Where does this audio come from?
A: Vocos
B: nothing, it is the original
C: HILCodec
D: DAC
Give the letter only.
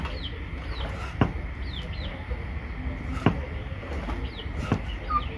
B